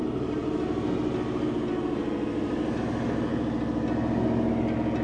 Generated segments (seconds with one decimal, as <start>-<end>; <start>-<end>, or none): none